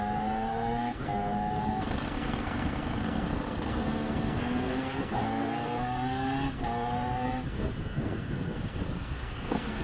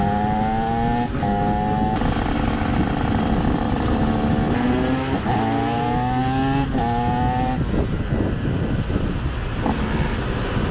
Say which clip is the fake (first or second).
first